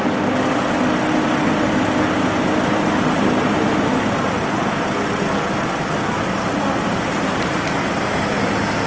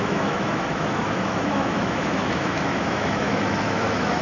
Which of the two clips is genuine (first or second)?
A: first